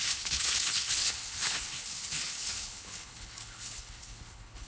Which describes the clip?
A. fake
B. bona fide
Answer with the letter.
A